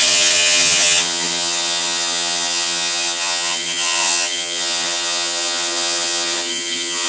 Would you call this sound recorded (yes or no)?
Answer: no